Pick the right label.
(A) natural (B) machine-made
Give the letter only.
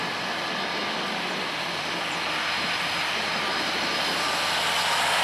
A